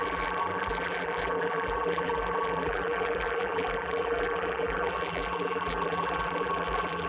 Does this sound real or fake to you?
fake